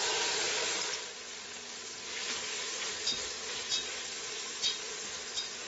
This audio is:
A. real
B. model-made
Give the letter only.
A